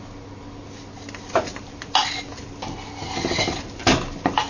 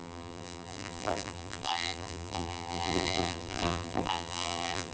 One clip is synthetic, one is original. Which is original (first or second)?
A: first